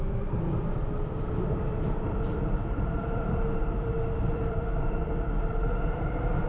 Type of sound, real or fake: fake